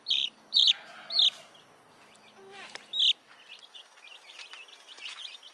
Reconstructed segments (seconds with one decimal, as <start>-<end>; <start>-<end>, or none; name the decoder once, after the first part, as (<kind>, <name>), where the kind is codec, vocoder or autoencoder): 0.0-1.1 (vocoder, BigVGAN v2)